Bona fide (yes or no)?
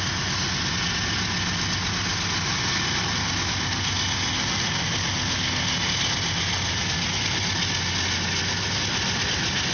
yes